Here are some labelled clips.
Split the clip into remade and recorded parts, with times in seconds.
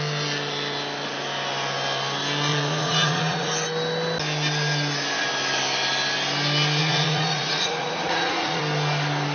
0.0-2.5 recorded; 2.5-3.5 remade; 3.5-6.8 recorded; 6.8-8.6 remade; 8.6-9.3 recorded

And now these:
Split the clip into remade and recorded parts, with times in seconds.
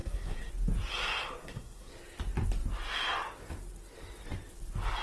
0.0-0.5 remade; 0.5-1.4 recorded; 1.4-1.9 remade; 1.9-5.0 recorded